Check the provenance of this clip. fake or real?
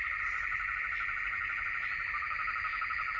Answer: fake